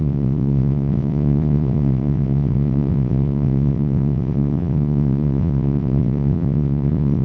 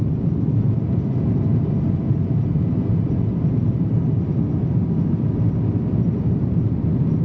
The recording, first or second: second